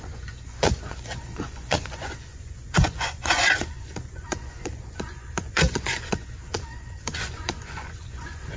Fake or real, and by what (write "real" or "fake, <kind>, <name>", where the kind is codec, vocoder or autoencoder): fake, vocoder, Vocos